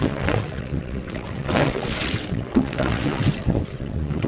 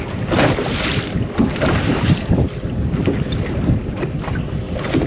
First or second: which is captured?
second